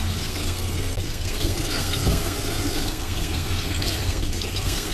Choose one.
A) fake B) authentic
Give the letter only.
A